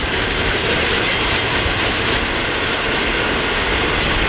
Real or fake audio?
real